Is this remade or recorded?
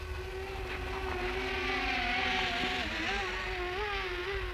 recorded